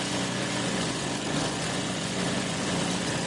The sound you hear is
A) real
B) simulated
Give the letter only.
B